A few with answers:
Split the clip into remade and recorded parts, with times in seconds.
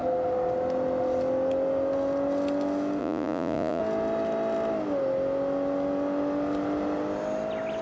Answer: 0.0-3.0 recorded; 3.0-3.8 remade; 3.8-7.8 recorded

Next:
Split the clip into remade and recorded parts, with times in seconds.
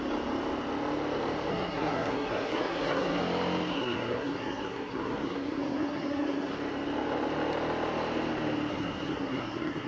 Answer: 0.0-1.5 recorded; 1.5-3.2 remade; 3.2-3.7 recorded; 3.7-6.5 remade; 6.5-8.7 recorded; 8.7-9.9 remade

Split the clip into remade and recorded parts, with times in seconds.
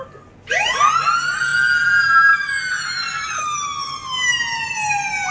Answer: 0.0-4.0 recorded; 4.0-4.6 remade; 4.6-5.3 recorded